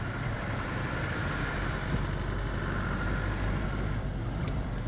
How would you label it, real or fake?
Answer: fake